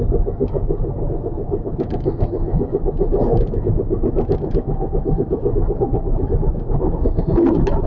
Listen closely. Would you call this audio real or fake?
fake